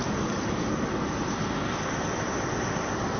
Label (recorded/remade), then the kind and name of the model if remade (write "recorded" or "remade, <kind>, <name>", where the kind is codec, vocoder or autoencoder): remade, vocoder, BigVGAN v2